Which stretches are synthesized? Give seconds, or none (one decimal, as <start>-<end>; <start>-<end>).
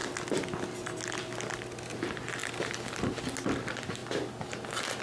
none